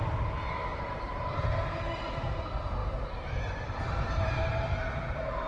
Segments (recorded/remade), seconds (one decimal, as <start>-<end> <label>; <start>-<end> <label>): 0.0-0.7 recorded; 0.7-1.5 remade; 1.5-2.8 recorded; 2.8-4.4 remade; 4.4-5.5 recorded